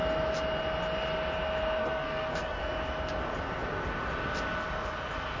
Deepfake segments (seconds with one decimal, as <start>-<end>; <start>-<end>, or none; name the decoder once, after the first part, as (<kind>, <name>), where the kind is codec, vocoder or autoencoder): 1.8-2.6 (codec, SNAC)